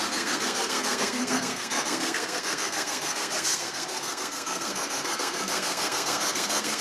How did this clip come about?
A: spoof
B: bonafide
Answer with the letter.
A